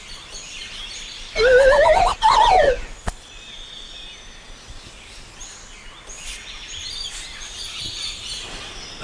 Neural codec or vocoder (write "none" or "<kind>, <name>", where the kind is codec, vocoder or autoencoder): none